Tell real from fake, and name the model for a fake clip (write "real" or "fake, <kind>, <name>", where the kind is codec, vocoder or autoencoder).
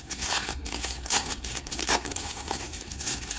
fake, codec, SNAC